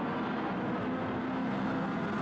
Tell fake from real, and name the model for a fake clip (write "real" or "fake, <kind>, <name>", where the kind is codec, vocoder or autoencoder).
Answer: real